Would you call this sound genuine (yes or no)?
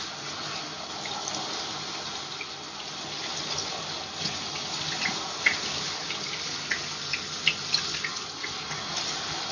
yes